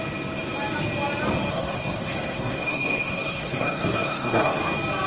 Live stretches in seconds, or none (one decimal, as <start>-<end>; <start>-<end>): 0.0-1.5; 4.6-5.1